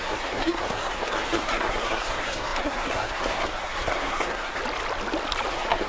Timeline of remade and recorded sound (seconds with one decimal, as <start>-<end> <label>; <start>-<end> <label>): 0.0-4.6 remade; 4.6-5.5 recorded; 5.5-5.9 remade